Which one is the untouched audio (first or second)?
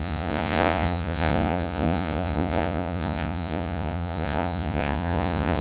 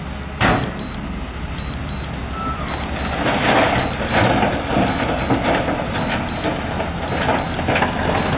second